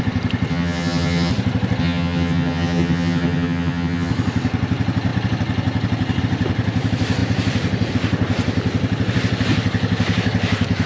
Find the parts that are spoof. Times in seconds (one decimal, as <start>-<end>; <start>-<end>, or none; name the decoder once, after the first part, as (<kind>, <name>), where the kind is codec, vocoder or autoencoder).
0.5-1.3 (vocoder, HiFi-GAN); 1.8-4.1